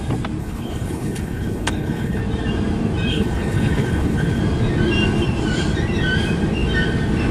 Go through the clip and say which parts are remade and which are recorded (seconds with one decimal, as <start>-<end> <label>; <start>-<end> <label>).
0.0-0.4 recorded; 0.4-2.2 remade; 2.2-3.1 recorded; 3.1-4.4 remade; 4.4-7.3 recorded